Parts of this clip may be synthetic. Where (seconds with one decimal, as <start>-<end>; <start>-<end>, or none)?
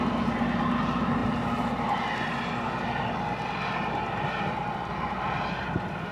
none